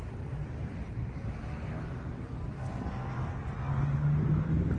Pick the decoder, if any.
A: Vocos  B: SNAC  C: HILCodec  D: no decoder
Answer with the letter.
D